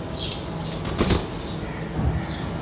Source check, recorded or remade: recorded